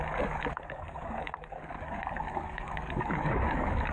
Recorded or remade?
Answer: remade